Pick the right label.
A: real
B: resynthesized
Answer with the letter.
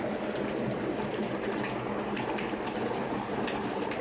A